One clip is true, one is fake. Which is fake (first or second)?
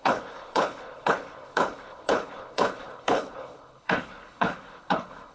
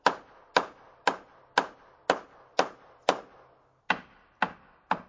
first